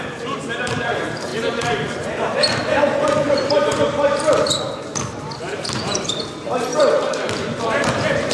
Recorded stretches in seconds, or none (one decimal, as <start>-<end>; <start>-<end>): none